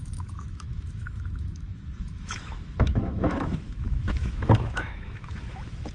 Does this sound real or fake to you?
fake